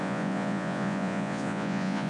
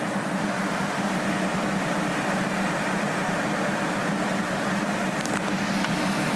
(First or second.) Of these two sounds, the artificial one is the first